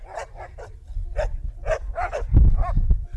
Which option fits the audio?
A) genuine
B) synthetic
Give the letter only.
A